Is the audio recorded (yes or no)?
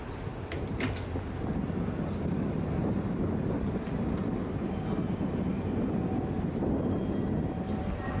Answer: yes